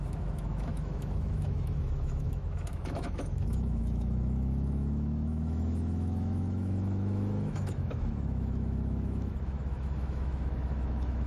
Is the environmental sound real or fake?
fake